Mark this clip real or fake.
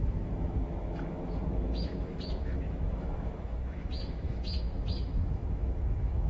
fake